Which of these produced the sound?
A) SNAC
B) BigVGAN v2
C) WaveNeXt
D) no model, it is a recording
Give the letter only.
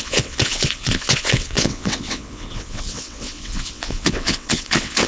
C